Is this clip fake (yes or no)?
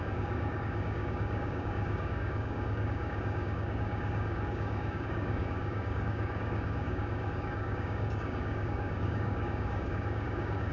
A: yes